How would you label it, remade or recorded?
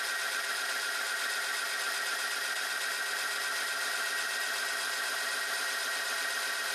recorded